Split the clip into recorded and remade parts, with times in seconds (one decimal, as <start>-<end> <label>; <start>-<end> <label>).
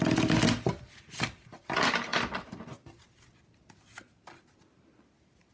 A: 0.0-5.5 recorded